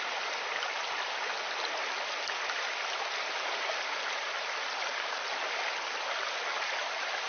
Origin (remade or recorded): recorded